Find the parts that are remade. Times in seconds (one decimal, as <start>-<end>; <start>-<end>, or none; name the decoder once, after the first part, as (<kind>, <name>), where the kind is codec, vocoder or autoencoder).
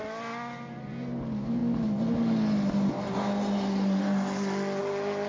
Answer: none